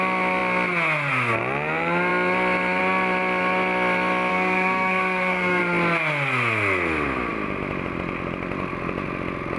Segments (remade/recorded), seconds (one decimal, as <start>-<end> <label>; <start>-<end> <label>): 0.0-4.3 recorded; 4.3-5.6 remade; 5.6-9.6 recorded